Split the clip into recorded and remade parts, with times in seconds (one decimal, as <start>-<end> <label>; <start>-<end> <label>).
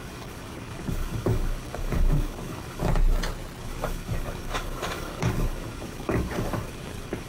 0.0-2.9 remade; 2.9-3.6 recorded; 3.6-7.3 remade